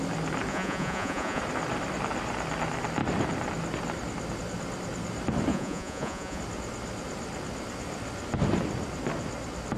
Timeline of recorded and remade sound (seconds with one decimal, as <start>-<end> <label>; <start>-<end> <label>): 0.0-0.5 recorded; 0.5-1.4 remade; 1.4-5.5 recorded; 5.5-6.4 remade; 6.4-9.8 recorded